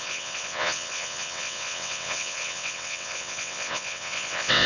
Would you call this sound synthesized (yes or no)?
yes